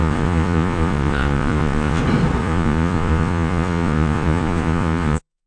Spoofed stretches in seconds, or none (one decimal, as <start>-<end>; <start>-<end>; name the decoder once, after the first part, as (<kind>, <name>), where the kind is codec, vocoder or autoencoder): 0.0-2.0 (vocoder, Vocos); 2.4-5.5